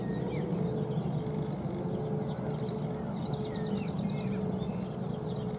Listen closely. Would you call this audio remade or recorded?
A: recorded